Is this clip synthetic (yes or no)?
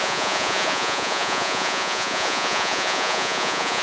yes